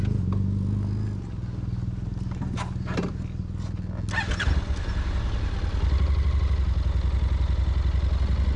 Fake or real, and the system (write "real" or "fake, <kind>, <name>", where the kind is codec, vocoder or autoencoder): real